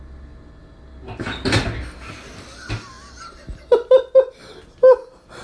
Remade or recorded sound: recorded